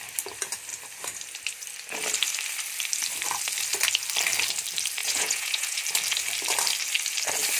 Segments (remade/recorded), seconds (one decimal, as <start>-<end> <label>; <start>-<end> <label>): 0.0-5.0 recorded; 5.0-5.8 remade; 5.8-7.6 recorded

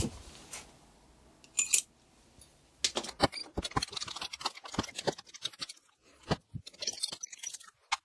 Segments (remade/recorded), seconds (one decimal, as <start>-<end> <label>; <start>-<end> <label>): 0.0-8.0 recorded